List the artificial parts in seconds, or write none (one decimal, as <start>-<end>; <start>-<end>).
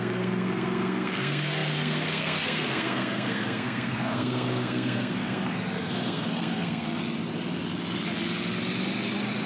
0.0-7.0